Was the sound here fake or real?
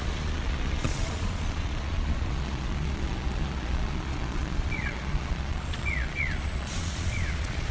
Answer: fake